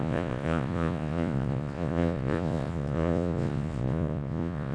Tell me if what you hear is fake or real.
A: fake